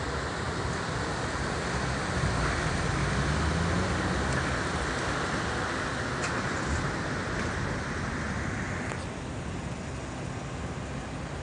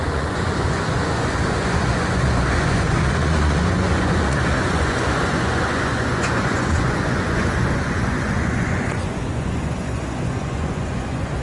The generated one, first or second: second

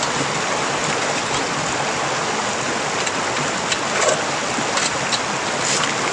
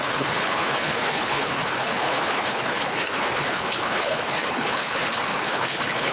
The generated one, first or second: second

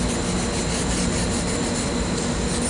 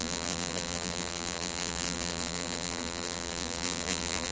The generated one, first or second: second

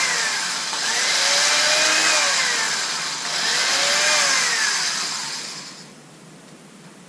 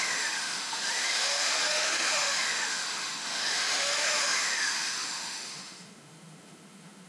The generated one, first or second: second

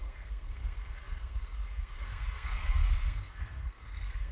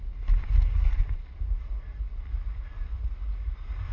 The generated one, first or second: first